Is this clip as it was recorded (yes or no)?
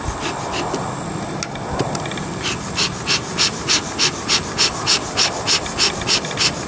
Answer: yes